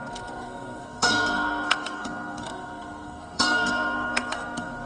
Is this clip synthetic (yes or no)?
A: yes